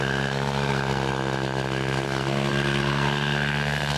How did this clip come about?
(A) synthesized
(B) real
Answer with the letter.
A